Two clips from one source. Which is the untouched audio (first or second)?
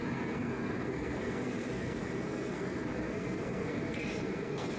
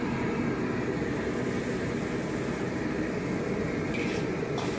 second